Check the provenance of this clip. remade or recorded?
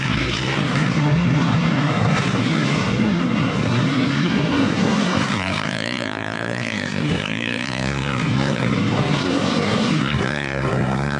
remade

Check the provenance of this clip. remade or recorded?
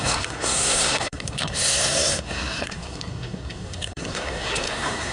remade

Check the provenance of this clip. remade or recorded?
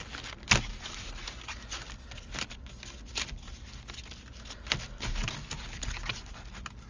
recorded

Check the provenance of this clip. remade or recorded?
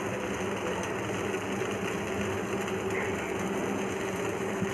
recorded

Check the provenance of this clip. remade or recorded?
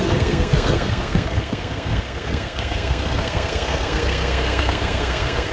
remade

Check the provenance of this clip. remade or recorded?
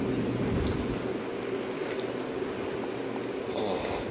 recorded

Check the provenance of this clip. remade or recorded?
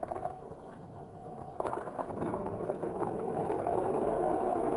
remade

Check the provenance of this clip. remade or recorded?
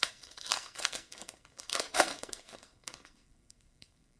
remade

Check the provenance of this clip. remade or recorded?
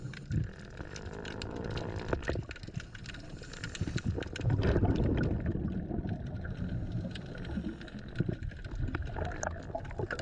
recorded